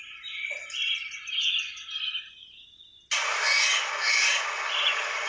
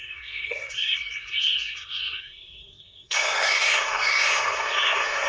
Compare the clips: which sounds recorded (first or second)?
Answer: first